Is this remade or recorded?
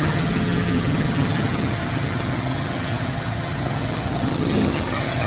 remade